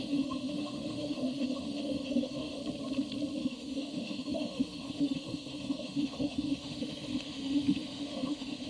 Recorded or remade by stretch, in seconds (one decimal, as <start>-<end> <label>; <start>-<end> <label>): 0.0-2.6 remade; 2.6-3.4 recorded; 3.4-8.7 remade